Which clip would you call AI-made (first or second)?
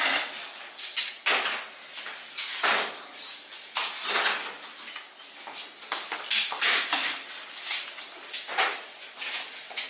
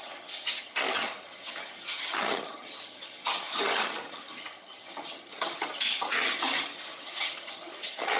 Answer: second